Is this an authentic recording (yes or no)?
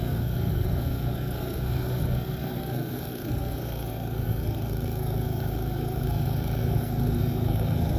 no